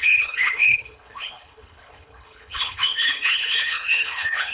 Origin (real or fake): fake